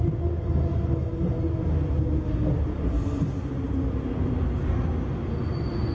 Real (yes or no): yes